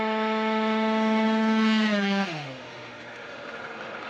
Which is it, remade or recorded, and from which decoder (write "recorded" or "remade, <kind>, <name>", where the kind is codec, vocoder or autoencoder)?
remade, autoencoder, DAC-VAE